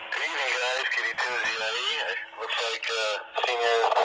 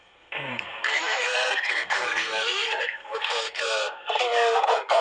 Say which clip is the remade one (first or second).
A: second